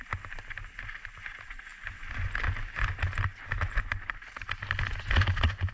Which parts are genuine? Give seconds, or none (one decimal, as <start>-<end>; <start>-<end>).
0.0-5.7